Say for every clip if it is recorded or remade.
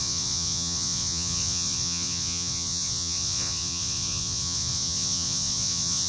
remade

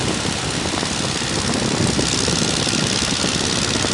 recorded